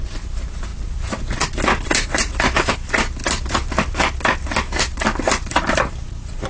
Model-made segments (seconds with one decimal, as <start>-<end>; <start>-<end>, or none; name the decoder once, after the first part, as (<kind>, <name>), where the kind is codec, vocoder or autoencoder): none